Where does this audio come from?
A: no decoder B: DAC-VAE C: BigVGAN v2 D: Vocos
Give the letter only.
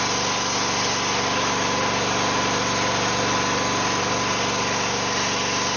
A